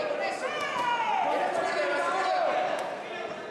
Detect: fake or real real